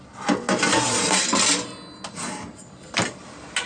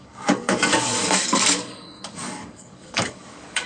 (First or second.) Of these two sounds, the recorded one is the first